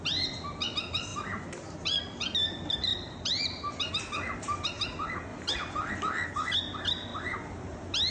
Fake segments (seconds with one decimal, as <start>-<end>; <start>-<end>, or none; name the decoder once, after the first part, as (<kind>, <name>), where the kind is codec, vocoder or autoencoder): 1.1-2.0 (vocoder, BigVGAN v2); 5.3-5.9